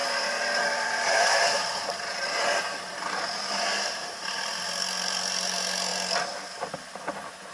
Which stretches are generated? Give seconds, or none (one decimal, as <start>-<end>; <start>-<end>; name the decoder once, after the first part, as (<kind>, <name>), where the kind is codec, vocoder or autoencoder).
0.0-4.5 (vocoder, BigVGAN v2)